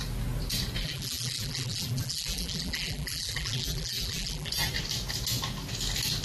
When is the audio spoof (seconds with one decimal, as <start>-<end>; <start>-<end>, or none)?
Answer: 0.8-4.5